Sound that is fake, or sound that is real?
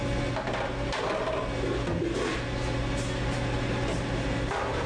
real